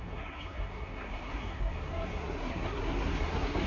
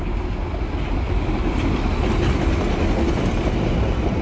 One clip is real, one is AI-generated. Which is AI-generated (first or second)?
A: first